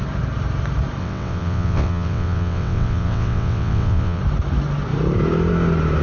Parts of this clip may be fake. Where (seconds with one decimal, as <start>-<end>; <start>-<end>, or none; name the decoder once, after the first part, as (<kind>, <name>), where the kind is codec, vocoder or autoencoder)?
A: 1.0-4.2 (vocoder, WaveNeXt)